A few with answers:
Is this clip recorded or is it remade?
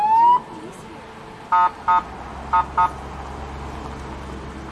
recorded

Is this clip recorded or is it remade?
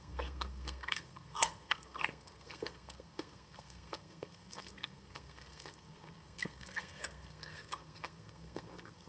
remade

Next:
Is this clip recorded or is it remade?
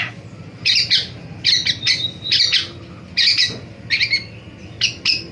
recorded